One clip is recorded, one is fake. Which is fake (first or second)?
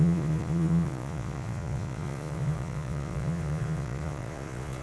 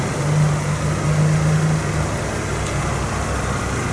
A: first